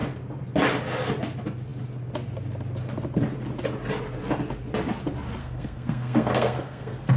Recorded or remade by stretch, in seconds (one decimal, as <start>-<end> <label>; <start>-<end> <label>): 0.0-5.4 recorded; 5.4-7.2 remade